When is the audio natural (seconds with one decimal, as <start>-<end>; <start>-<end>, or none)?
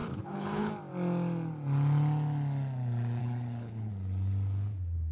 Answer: 0.7-3.2; 3.9-5.1